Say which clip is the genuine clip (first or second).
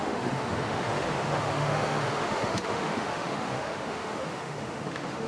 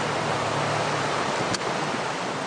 second